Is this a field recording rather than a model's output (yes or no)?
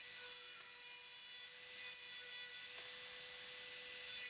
yes